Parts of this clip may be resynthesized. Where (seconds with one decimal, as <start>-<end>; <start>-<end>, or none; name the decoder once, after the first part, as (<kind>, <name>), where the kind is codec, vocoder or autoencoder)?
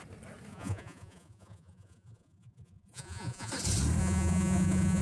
0.5-3.5 (vocoder, Vocos); 4.0-5.0